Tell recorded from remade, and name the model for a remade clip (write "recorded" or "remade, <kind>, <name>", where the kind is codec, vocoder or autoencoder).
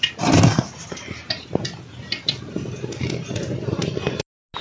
recorded